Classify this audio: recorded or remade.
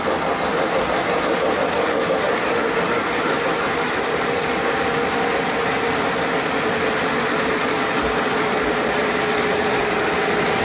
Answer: recorded